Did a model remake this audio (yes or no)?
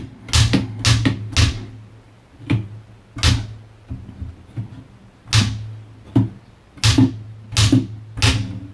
no